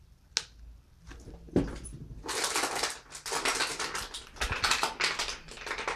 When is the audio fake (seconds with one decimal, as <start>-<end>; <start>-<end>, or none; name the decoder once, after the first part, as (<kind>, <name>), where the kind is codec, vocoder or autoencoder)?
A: none